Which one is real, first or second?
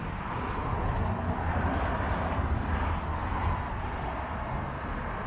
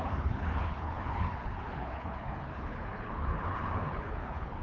first